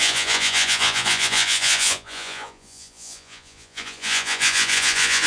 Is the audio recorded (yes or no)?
no